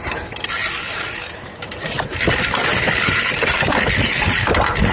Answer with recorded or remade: recorded